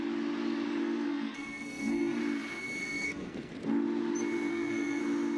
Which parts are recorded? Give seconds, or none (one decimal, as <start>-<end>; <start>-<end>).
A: 0.0-0.8; 2.2-2.8; 3.5-4.5; 5.0-5.4